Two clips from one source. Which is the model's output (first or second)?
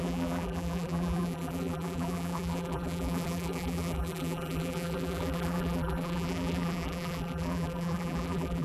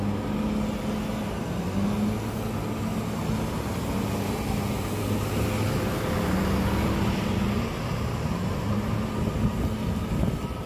first